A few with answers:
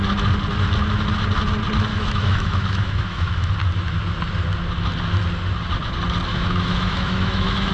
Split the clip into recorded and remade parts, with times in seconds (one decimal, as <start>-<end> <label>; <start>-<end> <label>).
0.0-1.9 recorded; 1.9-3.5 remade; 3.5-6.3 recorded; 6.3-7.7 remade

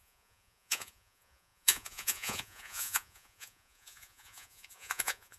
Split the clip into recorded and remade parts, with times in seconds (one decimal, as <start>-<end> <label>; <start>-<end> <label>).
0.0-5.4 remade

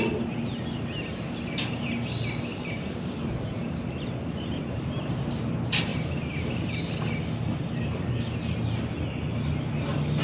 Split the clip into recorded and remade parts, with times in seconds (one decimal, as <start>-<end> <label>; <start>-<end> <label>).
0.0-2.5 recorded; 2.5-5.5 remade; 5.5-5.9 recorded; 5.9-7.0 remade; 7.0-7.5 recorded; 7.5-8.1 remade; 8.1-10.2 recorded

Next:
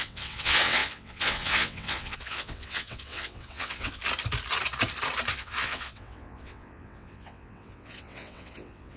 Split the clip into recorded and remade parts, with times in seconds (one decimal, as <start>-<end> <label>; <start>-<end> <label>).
0.0-4.0 remade; 4.0-5.3 recorded; 5.3-9.0 remade

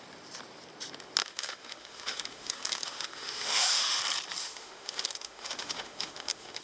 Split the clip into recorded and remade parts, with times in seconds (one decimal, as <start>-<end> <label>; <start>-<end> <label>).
0.0-1.2 recorded; 1.2-4.0 remade; 4.0-4.4 recorded; 4.4-6.6 remade

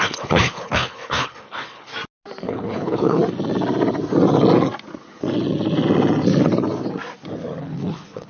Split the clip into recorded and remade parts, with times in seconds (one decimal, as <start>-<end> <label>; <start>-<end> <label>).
0.0-1.9 remade; 1.9-2.4 recorded; 2.4-3.2 remade; 3.2-7.6 recorded; 7.6-8.3 remade

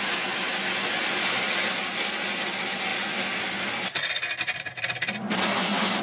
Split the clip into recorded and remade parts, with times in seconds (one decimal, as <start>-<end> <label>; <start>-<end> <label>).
0.0-6.0 recorded